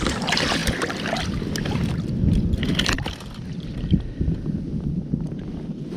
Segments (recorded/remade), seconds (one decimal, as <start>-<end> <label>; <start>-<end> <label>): 0.0-6.0 recorded